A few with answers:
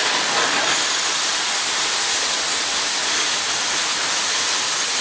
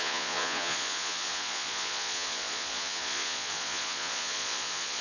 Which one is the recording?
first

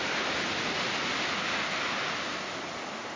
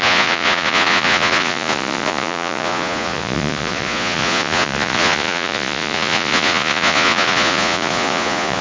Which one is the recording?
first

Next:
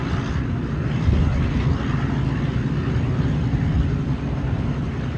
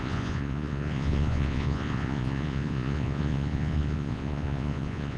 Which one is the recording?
first